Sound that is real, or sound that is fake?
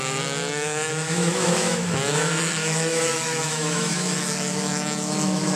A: fake